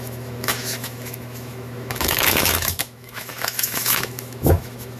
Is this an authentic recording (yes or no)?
no